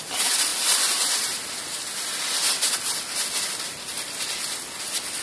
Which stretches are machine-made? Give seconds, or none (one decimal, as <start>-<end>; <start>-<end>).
0.5-1.1